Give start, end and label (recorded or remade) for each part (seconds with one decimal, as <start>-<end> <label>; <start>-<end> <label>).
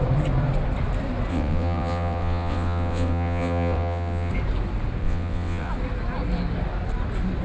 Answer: 0.0-1.3 recorded; 1.3-4.3 remade; 4.3-5.0 recorded; 5.0-5.7 remade; 5.7-7.4 recorded